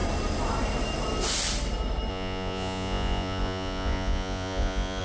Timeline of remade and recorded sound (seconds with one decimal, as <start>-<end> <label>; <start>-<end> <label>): 0.0-2.1 recorded; 2.1-5.0 remade